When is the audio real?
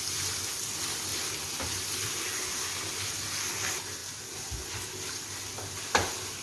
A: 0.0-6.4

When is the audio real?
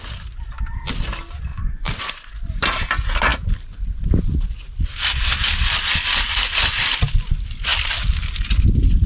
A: 0.0-1.5; 2.3-9.1